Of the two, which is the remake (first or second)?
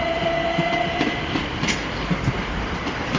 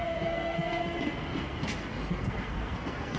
second